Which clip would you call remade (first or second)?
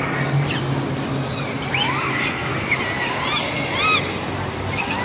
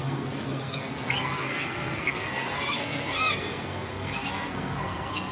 second